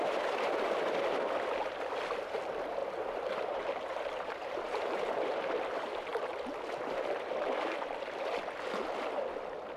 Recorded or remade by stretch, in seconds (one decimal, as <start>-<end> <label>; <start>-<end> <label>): 0.0-2.8 recorded; 2.8-5.5 remade; 5.5-9.8 recorded